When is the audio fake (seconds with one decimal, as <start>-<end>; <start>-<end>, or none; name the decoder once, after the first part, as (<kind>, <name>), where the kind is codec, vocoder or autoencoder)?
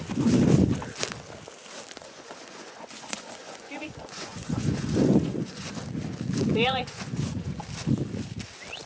2.0-5.7 (vocoder, Vocos); 6.5-7.6